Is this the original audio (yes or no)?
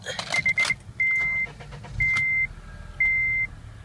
yes